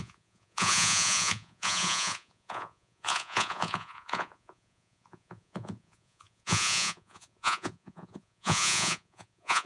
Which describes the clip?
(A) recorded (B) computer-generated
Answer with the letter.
B